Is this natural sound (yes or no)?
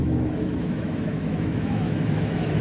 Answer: no